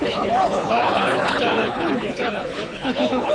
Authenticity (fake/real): fake